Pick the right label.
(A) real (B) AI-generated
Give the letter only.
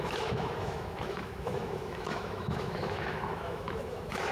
B